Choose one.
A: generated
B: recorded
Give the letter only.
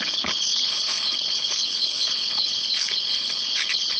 A